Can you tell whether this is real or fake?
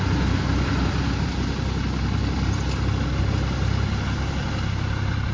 real